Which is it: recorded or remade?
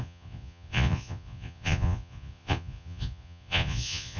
remade